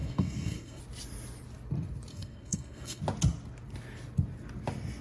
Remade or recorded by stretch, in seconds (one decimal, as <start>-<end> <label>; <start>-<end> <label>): 0.0-0.8 remade; 0.8-2.1 recorded; 2.1-3.0 remade; 3.0-5.0 recorded